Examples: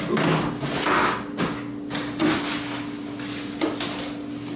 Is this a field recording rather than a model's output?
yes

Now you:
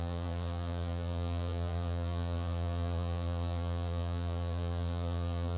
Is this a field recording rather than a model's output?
no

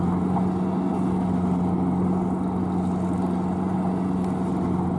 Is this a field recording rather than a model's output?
yes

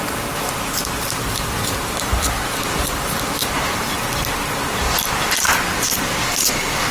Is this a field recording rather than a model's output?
no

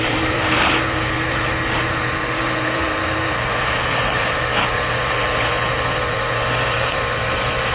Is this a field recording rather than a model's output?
no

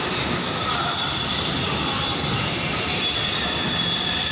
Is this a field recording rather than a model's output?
yes